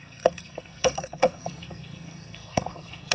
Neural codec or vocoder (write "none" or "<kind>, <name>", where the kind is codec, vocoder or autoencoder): codec, SNAC